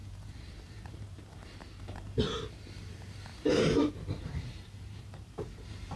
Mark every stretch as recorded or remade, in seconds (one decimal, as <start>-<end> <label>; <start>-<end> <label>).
0.0-6.0 remade